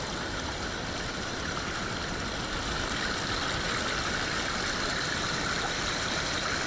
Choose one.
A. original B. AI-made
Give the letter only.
A